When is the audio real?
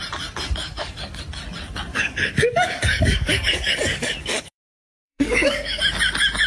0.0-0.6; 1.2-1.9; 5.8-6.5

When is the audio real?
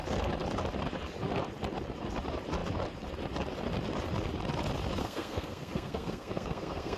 0.0-5.0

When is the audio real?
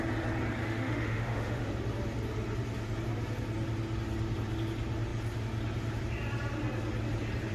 0.0-0.6; 1.7-7.5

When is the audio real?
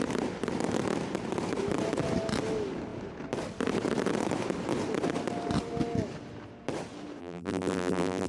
0.0-7.2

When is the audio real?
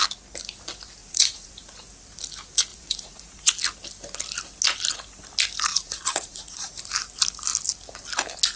0.0-1.0; 1.5-2.7; 3.5-5.7; 6.7-8.6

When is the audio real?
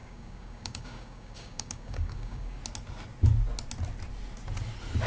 2.6-5.1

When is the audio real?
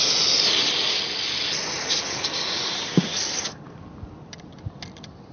0.0-5.3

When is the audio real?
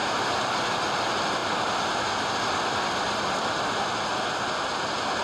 0.0-5.2